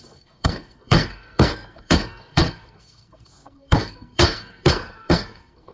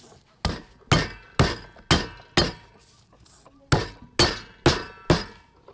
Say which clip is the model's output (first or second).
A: first